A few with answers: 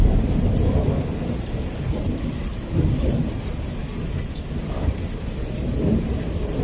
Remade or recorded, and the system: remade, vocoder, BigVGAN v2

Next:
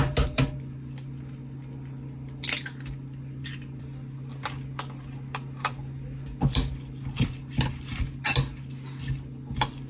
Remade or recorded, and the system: recorded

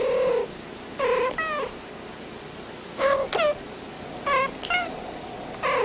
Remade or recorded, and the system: recorded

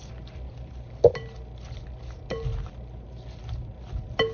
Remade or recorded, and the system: recorded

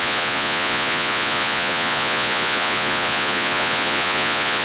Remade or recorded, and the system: remade, vocoder, Vocos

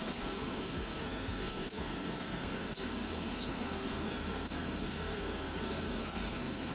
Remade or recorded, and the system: remade, codec, SNAC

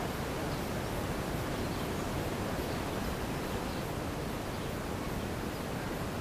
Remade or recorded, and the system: recorded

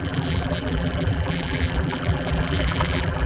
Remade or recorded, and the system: remade, vocoder, BigVGAN v2